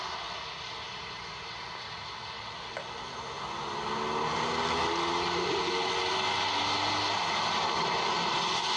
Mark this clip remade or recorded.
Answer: recorded